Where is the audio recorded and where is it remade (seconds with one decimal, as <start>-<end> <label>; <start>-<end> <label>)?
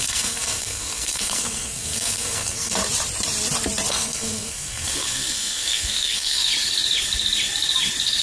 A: 0.0-2.8 remade; 2.8-3.9 recorded; 3.9-6.5 remade; 6.5-8.2 recorded